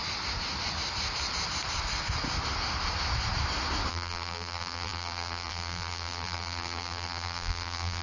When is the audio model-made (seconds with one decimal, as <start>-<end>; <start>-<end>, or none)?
3.9-8.0